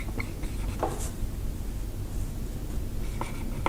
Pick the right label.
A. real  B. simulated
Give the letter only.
A